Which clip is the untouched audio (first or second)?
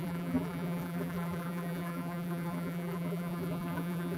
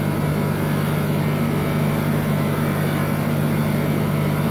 second